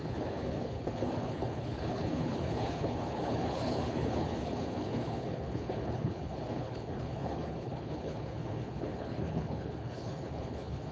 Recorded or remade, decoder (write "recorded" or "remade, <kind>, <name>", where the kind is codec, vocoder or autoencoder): remade, codec, HILCodec